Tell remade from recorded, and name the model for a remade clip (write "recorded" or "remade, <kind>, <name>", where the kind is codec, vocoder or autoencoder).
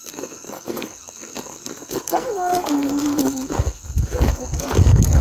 remade, codec, SNAC